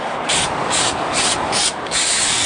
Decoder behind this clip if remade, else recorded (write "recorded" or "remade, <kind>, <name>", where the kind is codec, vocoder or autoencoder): remade, codec, DAC